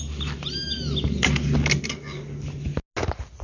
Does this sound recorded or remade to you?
recorded